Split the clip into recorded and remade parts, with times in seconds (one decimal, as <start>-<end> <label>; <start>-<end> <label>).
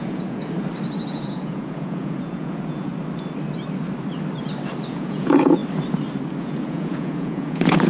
0.0-0.4 remade; 0.4-1.1 recorded; 1.1-2.9 remade; 2.9-4.9 recorded; 4.9-5.6 remade; 5.6-6.4 recorded; 6.4-7.9 remade